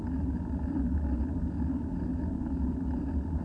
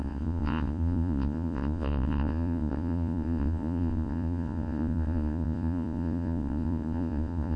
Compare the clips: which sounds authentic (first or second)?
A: first